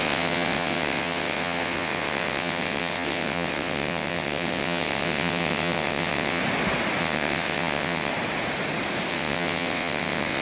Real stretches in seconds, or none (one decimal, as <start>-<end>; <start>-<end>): 6.4-7.0; 8.1-9.1